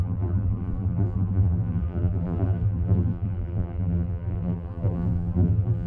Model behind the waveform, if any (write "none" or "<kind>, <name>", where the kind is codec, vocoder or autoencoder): vocoder, BigVGAN v2